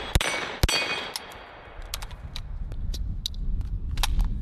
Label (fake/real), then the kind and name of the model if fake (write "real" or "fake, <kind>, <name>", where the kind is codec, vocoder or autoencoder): real